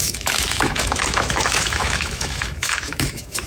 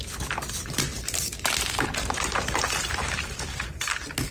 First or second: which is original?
second